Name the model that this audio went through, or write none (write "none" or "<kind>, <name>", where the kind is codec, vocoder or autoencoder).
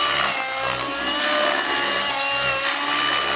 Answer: none